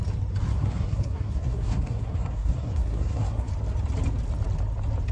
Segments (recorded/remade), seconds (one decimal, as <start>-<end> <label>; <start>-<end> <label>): 0.0-0.4 recorded; 0.4-3.5 remade; 3.5-5.1 recorded

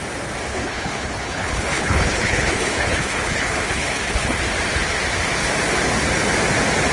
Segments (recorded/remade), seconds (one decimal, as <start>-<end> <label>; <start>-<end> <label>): 0.0-0.5 recorded; 0.5-4.4 remade; 4.4-6.9 recorded

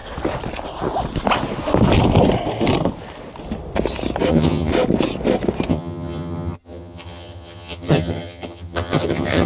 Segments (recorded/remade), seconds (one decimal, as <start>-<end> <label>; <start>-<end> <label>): 0.0-4.3 recorded; 4.3-4.7 remade; 4.7-5.7 recorded; 5.7-9.5 remade